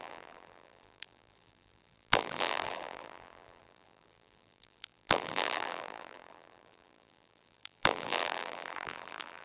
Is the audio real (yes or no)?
no